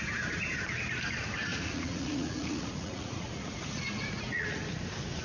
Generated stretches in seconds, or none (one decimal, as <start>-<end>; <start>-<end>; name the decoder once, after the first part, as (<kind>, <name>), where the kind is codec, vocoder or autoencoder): 1.5-4.6 (vocoder, Vocos)